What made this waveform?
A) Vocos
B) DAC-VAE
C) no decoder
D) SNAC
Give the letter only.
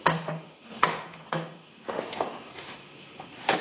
B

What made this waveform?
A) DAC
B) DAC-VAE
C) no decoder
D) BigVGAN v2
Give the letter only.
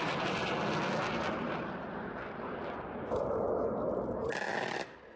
C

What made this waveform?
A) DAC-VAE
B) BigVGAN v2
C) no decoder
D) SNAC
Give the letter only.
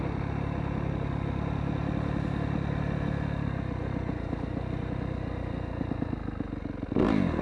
C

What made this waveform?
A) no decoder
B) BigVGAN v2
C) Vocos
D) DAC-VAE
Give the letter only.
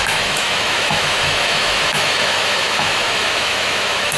D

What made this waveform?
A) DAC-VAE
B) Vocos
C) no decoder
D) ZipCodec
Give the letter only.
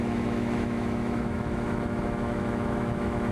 A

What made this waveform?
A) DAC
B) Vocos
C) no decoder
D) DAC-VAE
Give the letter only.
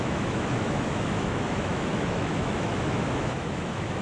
D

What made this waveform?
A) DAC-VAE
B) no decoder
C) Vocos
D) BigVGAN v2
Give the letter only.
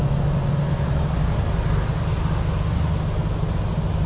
B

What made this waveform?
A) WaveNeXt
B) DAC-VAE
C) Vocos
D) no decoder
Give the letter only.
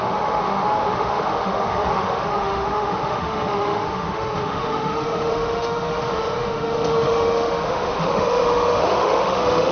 B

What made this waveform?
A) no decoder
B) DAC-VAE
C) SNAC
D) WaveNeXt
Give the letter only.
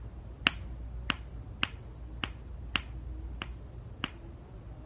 A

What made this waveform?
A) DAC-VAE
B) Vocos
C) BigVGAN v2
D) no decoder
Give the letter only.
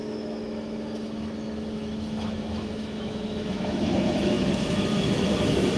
A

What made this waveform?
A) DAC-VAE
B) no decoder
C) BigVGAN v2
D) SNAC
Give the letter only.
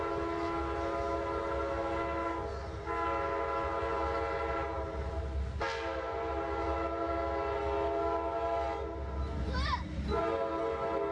B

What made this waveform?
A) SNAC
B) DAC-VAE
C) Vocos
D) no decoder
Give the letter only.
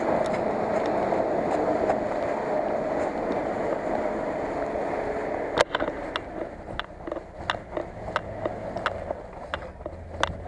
D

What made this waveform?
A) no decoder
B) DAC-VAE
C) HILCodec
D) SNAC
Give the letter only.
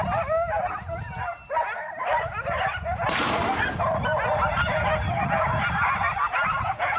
A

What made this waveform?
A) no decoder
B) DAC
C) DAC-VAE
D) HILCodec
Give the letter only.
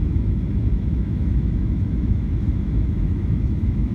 C